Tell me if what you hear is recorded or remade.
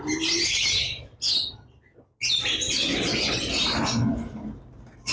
recorded